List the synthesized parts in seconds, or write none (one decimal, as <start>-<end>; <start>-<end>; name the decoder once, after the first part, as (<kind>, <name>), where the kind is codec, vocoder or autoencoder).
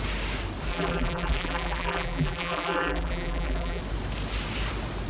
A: 0.7-3.8 (vocoder, BigVGAN v2)